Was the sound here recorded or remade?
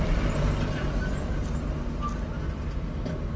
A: recorded